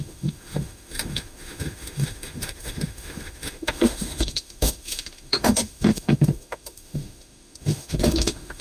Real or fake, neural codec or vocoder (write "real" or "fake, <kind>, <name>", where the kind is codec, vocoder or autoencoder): fake, autoencoder, DAC-VAE